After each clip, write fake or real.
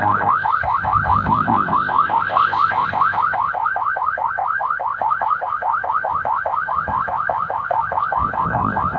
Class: fake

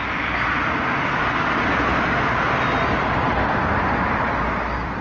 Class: real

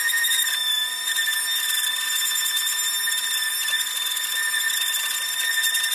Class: real